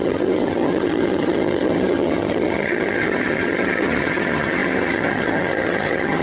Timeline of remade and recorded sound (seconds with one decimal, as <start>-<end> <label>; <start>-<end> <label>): 0.0-6.2 remade